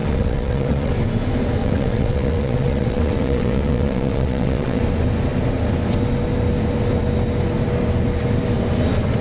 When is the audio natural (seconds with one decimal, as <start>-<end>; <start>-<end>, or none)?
0.9-1.6; 4.8-9.2